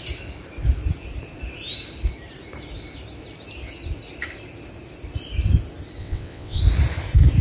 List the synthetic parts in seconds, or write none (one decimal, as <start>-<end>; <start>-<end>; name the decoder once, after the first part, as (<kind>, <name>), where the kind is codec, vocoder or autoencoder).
6.0-6.6 (vocoder, WaveNeXt)